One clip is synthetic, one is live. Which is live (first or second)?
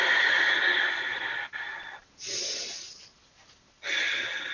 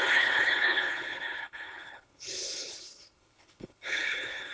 first